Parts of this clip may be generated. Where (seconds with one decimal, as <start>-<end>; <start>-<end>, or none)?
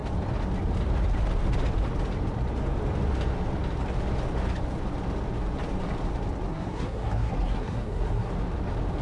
6.5-8.3